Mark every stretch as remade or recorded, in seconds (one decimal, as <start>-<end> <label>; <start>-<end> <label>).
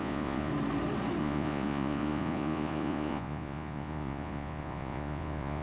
0.0-0.5 remade; 0.5-1.2 recorded; 1.2-5.6 remade